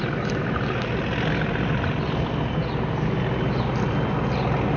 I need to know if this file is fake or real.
real